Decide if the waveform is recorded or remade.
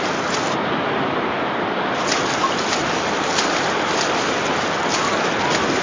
recorded